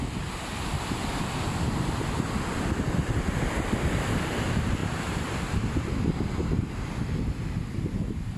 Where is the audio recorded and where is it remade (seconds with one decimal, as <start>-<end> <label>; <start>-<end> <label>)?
0.0-4.8 recorded; 4.8-5.9 remade; 5.9-8.4 recorded